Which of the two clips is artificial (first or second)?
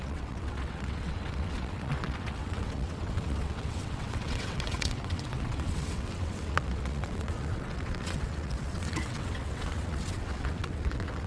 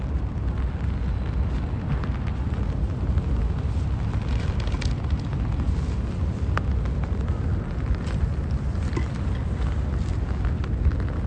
first